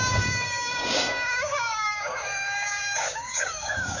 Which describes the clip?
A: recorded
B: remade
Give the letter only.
B